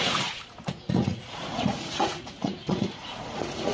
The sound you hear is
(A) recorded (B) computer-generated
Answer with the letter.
B